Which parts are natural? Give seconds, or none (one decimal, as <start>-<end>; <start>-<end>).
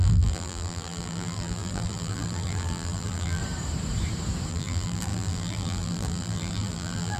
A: 3.4-4.5